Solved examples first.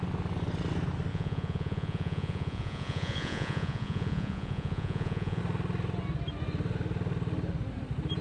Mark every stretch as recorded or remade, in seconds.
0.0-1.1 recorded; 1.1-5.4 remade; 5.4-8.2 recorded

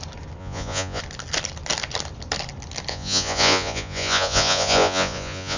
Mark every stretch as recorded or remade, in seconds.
0.0-0.4 recorded; 0.4-1.0 remade; 1.0-2.9 recorded; 2.9-5.6 remade

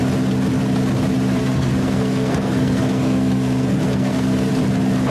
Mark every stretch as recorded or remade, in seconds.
0.0-1.4 recorded; 1.4-4.5 remade; 4.5-5.1 recorded

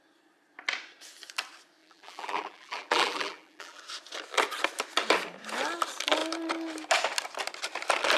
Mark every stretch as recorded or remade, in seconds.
0.0-1.8 recorded; 1.8-3.8 remade; 3.8-8.2 recorded

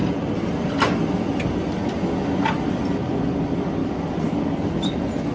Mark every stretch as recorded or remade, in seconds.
0.0-5.3 recorded

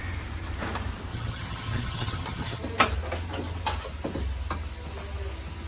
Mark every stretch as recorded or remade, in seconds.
0.0-1.1 recorded; 1.1-2.6 remade; 2.6-5.7 recorded